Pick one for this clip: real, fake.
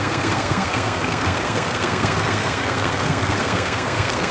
fake